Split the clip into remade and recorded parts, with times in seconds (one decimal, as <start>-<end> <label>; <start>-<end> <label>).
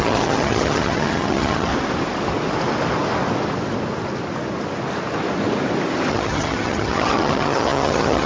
0.0-1.7 remade; 1.7-6.1 recorded; 6.1-8.3 remade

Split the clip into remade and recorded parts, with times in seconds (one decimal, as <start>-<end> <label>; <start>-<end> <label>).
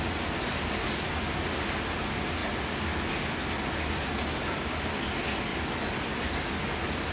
0.0-7.1 recorded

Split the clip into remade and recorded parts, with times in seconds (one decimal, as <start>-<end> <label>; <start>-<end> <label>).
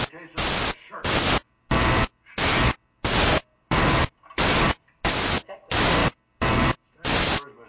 0.0-7.7 recorded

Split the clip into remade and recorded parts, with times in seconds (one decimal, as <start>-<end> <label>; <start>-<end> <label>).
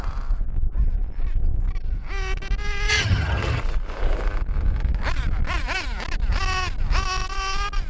0.0-2.9 recorded; 2.9-3.6 remade; 3.6-7.9 recorded